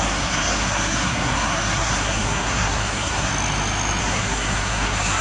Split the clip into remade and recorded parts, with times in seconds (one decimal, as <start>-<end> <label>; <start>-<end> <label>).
0.0-3.3 remade; 3.3-4.0 recorded; 4.0-5.2 remade